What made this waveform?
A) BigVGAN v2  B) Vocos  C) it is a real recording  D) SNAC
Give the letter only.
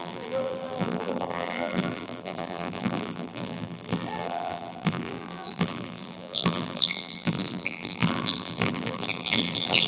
A